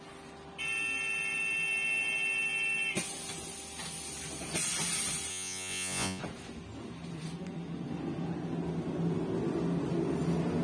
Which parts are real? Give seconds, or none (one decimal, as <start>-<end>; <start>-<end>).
0.0-5.3; 6.2-10.6